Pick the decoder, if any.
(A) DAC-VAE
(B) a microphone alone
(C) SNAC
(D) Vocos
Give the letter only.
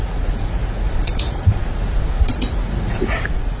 D